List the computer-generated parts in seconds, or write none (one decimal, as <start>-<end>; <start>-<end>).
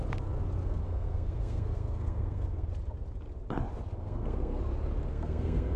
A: 0.6-2.7; 4.0-4.6; 5.1-5.8